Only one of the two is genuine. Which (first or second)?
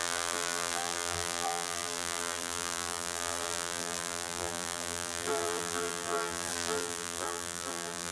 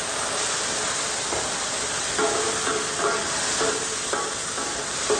second